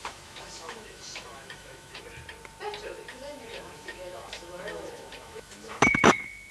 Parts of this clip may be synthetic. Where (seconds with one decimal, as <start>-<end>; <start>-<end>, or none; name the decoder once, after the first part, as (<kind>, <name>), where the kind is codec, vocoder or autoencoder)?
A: 0.0-2.0 (autoencoder, DAC-VAE); 3.1-6.5